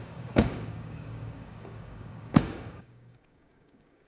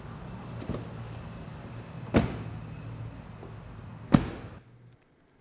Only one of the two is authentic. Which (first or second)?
second